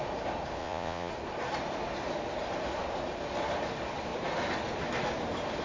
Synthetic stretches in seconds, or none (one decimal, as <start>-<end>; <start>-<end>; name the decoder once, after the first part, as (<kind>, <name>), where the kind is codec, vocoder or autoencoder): 0.6-1.1 (vocoder, Vocos)